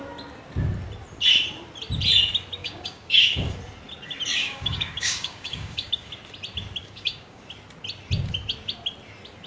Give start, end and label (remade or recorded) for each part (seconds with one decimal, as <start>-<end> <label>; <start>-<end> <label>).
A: 0.0-2.6 recorded; 2.6-3.5 remade; 3.5-4.4 recorded; 4.4-6.1 remade; 6.1-6.8 recorded; 6.8-7.4 remade; 7.4-9.5 recorded